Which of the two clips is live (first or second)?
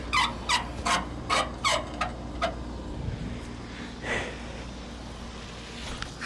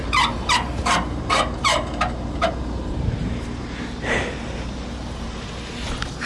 first